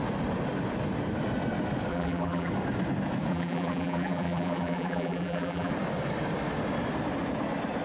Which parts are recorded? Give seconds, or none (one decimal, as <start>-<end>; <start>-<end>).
0.0-1.9; 2.5-3.3; 5.7-7.8